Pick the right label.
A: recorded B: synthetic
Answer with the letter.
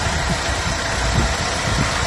A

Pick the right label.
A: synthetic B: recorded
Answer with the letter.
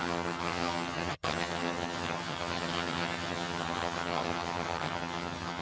A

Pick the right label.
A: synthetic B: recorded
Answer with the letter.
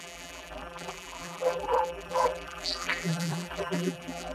A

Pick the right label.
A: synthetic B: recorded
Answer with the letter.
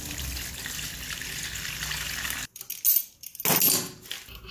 B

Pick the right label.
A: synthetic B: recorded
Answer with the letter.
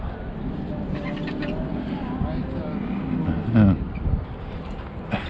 B